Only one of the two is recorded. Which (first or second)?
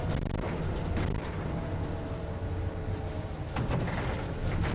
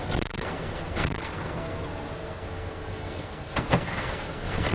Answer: first